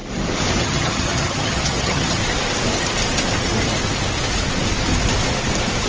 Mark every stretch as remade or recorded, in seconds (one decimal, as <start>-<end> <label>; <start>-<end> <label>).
0.0-0.6 recorded; 0.6-2.2 remade; 2.2-5.9 recorded